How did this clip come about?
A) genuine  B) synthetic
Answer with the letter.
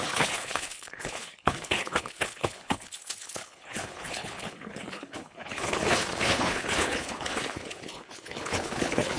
B